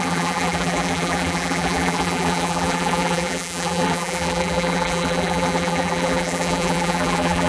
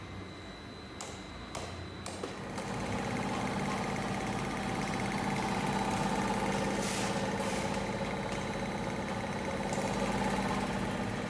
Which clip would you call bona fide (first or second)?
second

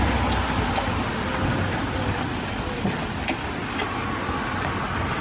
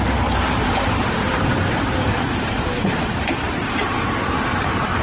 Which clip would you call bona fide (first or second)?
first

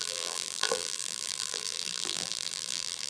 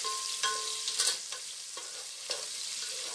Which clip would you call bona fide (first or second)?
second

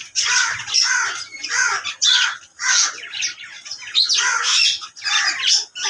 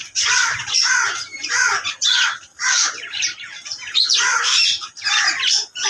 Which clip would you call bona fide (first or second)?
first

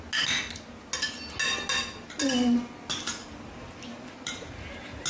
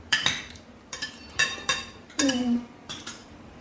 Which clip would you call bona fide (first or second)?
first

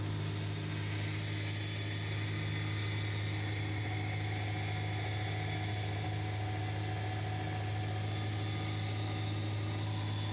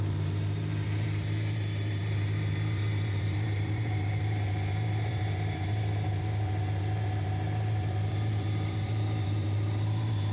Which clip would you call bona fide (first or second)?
first